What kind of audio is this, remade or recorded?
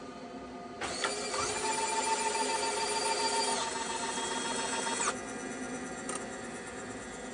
recorded